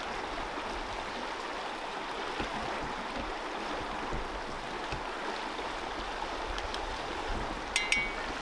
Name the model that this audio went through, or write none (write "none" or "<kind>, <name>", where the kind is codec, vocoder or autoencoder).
none